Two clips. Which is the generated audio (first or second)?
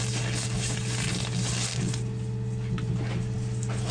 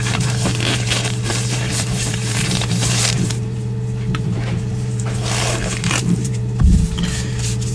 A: second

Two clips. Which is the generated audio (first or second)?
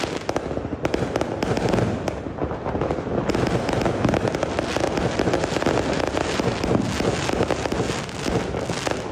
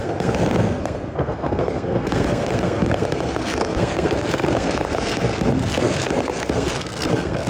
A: second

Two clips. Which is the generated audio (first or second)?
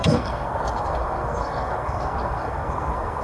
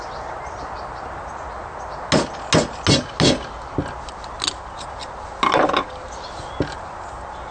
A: first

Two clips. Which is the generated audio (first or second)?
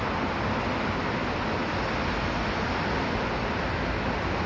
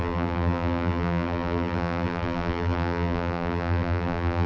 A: second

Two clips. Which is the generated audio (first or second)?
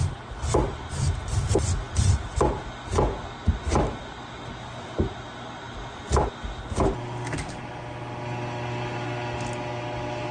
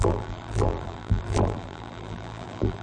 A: second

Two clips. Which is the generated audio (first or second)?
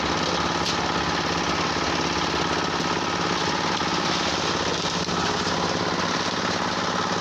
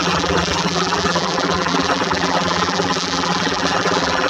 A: second